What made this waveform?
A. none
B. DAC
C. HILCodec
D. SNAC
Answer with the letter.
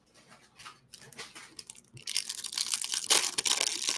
A